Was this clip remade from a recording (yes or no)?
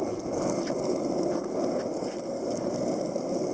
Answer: no